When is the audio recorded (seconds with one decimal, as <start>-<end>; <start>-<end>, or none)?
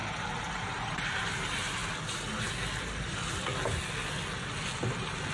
1.8-5.3